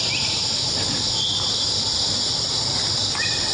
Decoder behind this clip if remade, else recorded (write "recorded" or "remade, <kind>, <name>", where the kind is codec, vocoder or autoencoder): recorded